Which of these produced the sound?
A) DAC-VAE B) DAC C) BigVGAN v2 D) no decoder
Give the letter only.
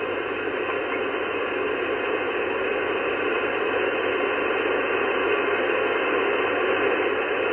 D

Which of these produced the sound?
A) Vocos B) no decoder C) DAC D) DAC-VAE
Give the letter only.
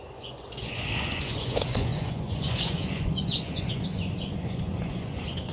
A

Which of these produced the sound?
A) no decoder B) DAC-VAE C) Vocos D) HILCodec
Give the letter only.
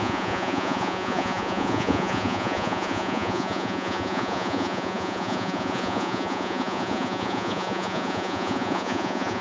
C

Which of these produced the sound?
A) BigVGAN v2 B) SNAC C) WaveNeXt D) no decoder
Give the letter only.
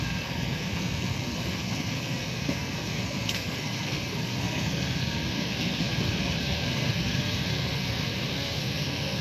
B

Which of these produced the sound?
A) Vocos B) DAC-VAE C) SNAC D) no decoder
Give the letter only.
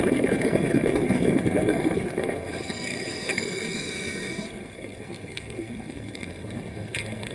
C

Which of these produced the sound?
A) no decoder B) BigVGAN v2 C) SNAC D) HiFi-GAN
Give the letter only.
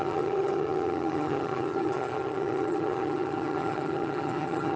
D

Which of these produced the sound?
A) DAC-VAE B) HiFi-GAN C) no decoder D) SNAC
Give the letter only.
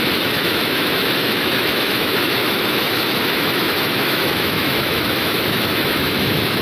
A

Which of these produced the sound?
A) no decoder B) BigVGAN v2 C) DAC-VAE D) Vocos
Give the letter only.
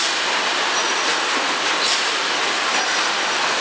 B